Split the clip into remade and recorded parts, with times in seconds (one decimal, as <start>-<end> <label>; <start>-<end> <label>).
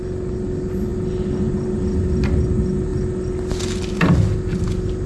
0.0-5.1 recorded